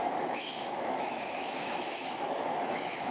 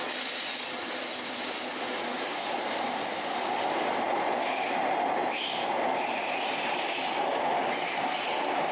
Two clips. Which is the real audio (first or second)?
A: second